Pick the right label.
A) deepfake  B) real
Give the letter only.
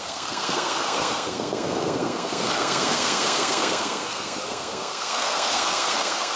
A